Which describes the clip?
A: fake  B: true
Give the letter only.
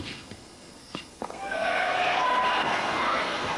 A